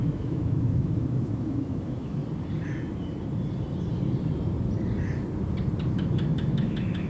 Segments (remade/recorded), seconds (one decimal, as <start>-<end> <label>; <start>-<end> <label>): 0.0-2.2 remade; 2.2-5.9 recorded; 5.9-7.1 remade